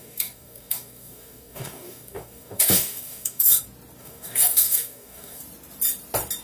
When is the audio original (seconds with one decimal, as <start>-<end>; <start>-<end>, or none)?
3.6-4.0; 5.4-6.4